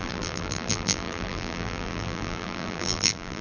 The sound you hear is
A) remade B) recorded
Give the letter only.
A